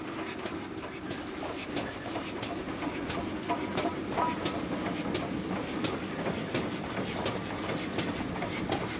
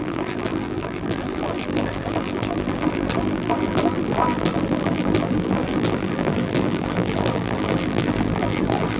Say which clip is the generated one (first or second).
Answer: second